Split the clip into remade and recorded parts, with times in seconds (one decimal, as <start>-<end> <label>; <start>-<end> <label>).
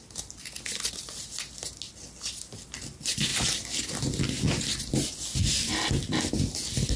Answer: 0.0-7.0 recorded